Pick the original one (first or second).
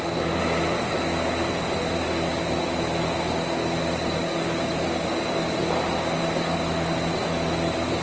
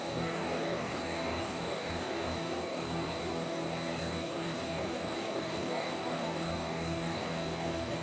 first